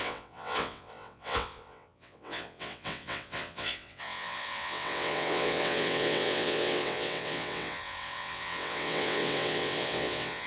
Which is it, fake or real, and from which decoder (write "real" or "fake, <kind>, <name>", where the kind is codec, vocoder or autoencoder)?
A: fake, vocoder, WaveNeXt